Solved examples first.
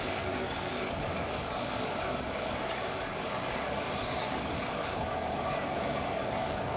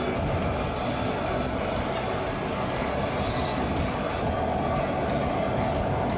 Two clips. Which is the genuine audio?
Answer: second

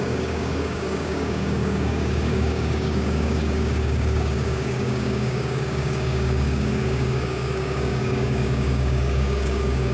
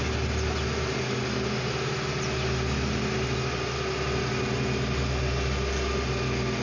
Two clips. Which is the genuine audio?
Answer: second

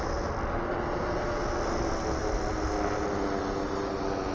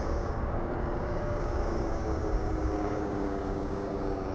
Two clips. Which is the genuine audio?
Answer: first